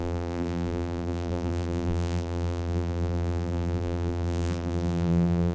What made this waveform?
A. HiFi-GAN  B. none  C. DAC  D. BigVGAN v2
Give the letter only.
D